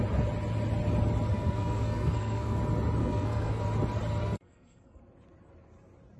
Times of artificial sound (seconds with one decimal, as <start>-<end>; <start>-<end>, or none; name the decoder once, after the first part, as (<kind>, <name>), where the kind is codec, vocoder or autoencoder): 1.3-2.6 (codec, SNAC); 3.0-3.6; 4.2-5.0